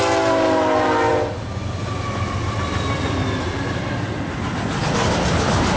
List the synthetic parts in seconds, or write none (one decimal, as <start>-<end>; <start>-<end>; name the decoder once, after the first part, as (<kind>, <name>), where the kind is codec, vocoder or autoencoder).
none